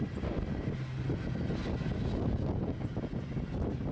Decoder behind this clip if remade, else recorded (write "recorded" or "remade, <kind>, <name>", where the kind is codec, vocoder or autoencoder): recorded